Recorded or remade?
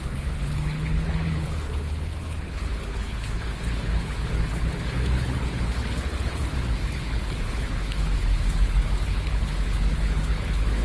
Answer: remade